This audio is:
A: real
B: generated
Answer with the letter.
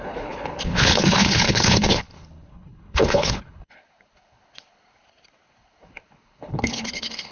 B